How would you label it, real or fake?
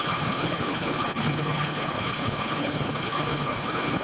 fake